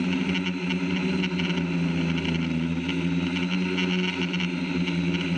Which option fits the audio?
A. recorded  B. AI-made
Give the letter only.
A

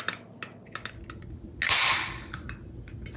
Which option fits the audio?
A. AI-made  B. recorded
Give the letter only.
B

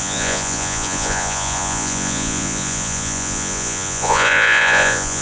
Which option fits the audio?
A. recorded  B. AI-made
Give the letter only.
B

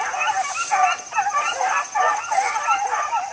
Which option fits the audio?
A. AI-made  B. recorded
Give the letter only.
B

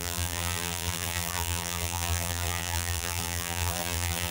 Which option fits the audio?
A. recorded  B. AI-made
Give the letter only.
B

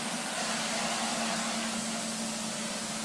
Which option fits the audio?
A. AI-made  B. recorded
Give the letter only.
B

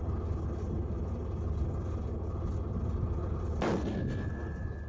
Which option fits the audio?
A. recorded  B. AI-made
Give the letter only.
A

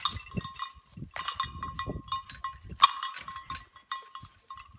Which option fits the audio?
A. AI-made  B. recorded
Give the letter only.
B